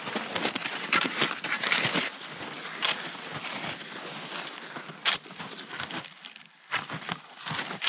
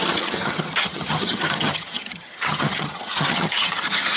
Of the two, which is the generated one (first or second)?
second